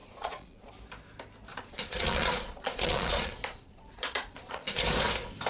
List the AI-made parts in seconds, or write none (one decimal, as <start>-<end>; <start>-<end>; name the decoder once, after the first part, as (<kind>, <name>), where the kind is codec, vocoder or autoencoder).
0.0-0.7 (vocoder, Vocos); 1.5-4.8